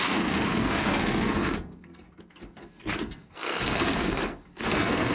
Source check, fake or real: fake